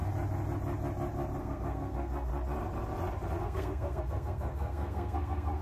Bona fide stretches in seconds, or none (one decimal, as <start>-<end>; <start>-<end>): 0.0-1.4; 2.3-3.4

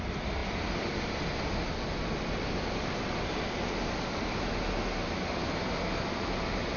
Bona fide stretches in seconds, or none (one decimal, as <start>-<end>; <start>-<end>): 0.0-6.8